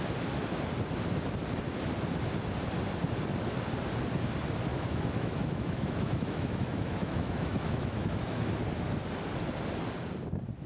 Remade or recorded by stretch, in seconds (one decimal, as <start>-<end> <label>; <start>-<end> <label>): 0.0-4.7 recorded; 4.7-8.5 remade; 8.5-10.7 recorded

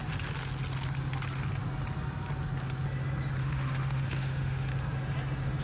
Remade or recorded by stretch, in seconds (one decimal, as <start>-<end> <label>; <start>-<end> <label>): 0.0-3.4 recorded; 3.4-4.7 remade; 4.7-5.6 recorded

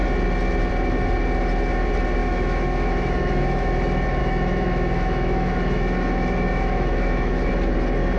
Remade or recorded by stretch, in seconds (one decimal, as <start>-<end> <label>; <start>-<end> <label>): 0.0-2.2 recorded; 2.2-3.7 remade; 3.7-4.2 recorded; 4.2-7.5 remade; 7.5-8.2 recorded

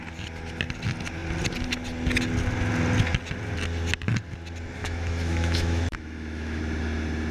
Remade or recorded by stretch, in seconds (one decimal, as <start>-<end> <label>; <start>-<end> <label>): 0.0-4.8 recorded; 4.8-6.6 remade; 6.6-7.3 recorded

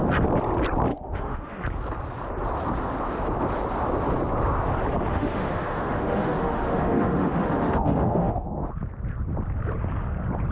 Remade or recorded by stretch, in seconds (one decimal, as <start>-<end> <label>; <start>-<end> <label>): 0.0-0.9 recorded; 0.9-1.5 remade; 1.5-5.1 recorded; 5.1-8.7 remade; 8.7-10.5 recorded

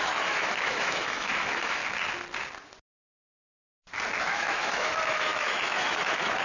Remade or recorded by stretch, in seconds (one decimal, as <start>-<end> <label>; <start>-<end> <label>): 0.0-1.8 remade; 1.8-2.8 recorded; 2.8-3.3 remade; 3.3-4.2 recorded; 4.2-6.4 remade